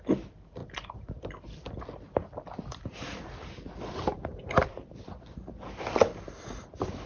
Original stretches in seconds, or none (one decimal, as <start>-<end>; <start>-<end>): 0.0-7.1